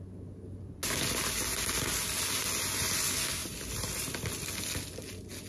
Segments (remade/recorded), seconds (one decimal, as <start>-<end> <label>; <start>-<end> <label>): 0.0-3.4 recorded; 3.4-4.7 remade; 4.7-5.5 recorded